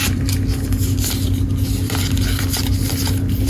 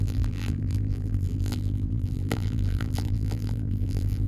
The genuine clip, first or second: first